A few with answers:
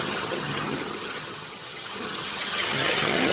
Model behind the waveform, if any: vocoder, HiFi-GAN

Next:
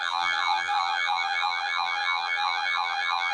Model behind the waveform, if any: vocoder, BigVGAN v2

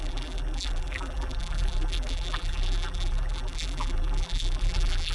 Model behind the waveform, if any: vocoder, BigVGAN v2